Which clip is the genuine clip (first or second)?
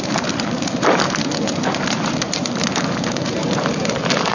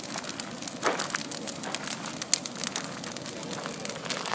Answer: second